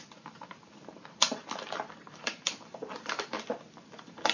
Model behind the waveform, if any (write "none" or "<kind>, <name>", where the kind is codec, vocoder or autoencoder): vocoder, BigVGAN v2